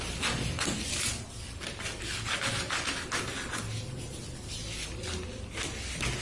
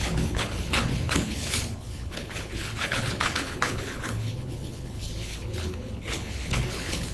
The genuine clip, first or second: first